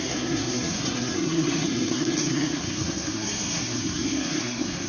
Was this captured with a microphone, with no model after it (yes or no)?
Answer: no